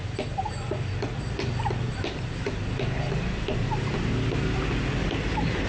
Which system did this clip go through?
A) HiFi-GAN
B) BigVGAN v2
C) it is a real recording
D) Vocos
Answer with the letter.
C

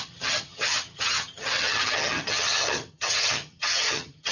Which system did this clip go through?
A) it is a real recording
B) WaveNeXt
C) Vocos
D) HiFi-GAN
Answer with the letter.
D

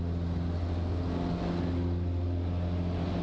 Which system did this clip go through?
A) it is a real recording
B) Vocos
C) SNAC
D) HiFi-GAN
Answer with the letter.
A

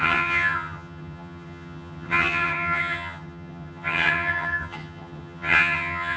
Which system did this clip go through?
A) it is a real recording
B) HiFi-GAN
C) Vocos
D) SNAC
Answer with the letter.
B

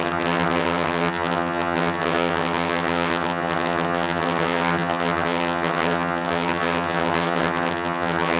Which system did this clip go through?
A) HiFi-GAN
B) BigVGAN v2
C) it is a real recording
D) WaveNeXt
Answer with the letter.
A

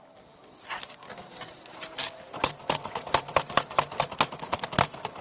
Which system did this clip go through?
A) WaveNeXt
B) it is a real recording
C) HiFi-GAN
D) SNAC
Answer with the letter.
B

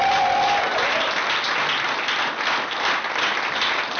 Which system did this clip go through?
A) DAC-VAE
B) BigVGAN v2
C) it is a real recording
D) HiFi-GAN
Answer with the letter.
C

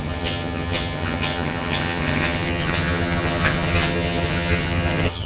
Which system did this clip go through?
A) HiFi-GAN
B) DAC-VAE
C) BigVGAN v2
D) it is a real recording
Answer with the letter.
A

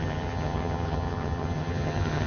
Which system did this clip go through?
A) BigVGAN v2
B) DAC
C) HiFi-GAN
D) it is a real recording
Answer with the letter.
C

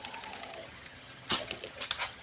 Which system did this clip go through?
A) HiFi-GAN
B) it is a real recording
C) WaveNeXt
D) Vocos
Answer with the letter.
A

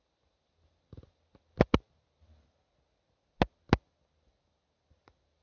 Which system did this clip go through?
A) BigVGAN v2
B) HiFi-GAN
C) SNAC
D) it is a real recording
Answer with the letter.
D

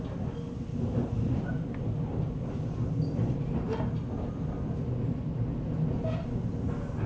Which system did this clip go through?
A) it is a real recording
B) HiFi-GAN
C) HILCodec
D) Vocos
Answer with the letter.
A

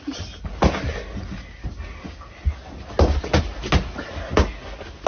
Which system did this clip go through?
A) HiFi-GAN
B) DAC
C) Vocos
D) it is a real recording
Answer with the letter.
D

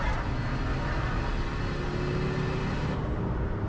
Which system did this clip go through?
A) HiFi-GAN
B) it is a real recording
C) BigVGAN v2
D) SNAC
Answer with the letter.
B